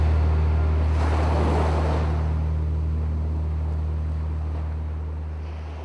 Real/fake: real